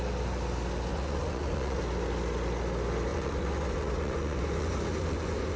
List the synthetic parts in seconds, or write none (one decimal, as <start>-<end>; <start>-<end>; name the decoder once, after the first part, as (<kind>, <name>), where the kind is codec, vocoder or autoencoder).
0.9-1.8 (vocoder, Vocos); 3.1-5.6